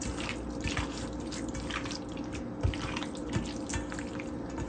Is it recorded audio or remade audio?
recorded